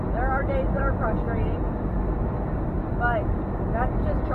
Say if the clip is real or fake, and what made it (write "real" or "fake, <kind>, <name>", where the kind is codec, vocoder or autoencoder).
real